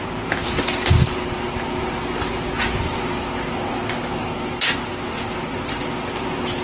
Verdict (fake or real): real